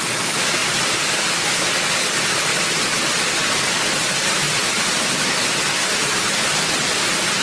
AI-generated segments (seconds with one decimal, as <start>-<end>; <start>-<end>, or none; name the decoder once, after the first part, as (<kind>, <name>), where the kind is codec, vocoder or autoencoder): 0.6-1.2 (vocoder, BigVGAN v2); 2.5-5.5